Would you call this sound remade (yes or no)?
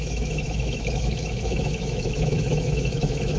yes